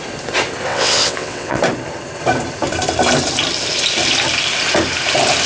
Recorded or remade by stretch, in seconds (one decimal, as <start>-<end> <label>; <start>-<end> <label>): 0.0-0.7 recorded; 0.7-1.6 remade; 1.6-5.5 recorded